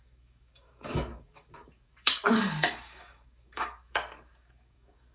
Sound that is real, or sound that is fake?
fake